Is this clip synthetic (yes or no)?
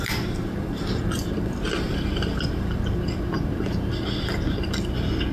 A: yes